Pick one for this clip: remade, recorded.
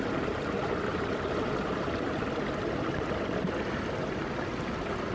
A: recorded